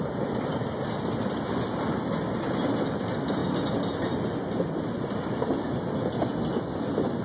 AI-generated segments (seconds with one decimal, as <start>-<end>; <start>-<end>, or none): none